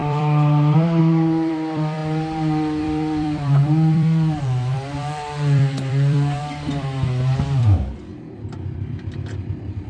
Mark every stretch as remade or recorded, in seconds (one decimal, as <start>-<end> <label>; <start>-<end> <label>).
0.0-9.9 remade